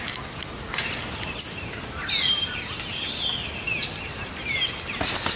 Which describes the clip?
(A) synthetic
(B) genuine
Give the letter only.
B